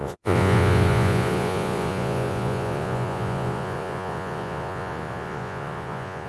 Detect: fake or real fake